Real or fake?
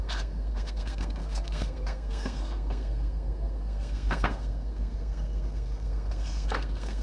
fake